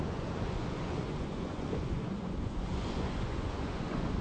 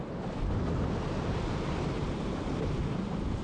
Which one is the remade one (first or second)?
first